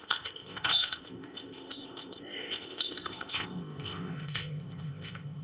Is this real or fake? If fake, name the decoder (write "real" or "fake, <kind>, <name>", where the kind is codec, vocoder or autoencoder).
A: fake, codec, ZipCodec